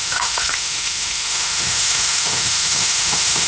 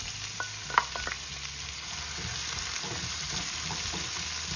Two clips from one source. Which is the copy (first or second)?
first